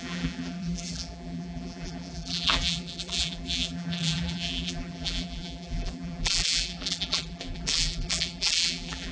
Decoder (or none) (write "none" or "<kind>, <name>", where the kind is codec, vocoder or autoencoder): vocoder, BigVGAN v2